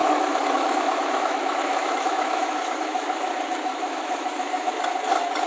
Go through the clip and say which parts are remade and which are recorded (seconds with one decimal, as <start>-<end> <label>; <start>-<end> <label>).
0.0-3.3 remade; 3.3-3.7 recorded; 3.7-4.7 remade; 4.7-5.5 recorded